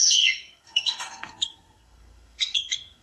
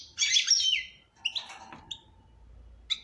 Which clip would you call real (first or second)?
second